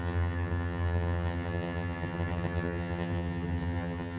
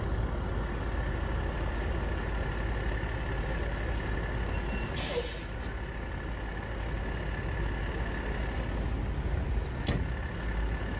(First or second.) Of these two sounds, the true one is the second